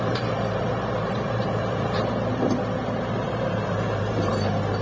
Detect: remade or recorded remade